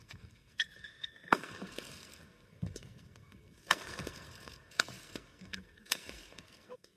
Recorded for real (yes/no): no